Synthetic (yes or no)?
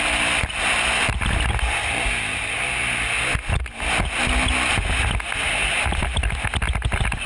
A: no